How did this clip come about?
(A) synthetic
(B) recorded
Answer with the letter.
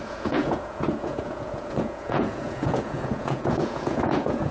A